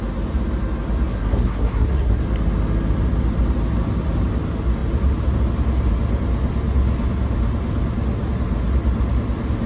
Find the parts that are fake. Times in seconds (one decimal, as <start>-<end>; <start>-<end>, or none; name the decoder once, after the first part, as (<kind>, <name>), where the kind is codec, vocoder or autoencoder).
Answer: 1.1-2.2 (codec, SNAC)